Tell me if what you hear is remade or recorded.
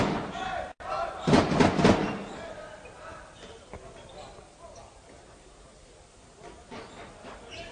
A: recorded